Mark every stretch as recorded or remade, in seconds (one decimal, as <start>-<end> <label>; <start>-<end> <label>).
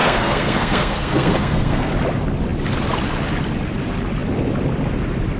0.0-1.9 remade; 1.9-5.4 recorded